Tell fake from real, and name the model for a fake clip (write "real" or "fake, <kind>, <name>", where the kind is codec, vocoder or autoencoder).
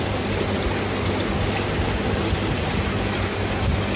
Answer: real